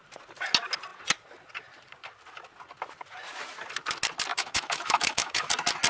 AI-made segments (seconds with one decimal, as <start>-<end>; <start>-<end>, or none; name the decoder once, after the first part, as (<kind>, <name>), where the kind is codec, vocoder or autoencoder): 4.3-5.5 (autoencoder, DAC-VAE)